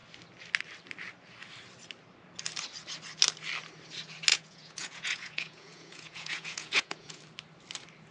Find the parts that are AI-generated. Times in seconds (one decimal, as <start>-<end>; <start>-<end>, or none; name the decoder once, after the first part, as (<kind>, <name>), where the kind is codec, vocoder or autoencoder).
4.3-7.2 (vocoder, Vocos)